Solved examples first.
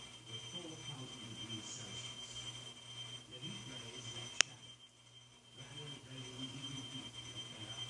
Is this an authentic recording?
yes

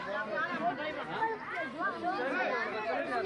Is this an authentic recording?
yes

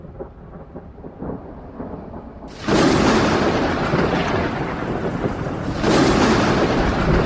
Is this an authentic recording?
yes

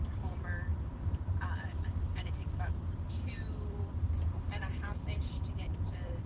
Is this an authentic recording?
no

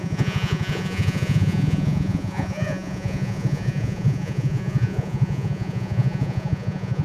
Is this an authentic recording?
no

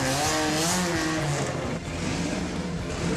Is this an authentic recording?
yes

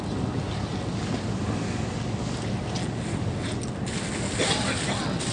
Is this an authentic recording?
yes